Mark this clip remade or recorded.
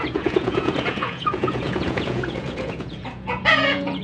remade